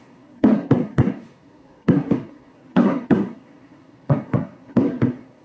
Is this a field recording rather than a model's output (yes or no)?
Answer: no